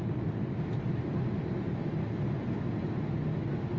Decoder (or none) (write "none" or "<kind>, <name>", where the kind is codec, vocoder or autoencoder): none